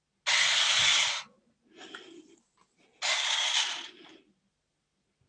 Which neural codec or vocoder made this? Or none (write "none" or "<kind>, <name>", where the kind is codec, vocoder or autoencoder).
none